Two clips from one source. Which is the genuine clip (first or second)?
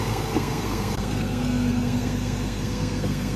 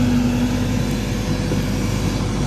second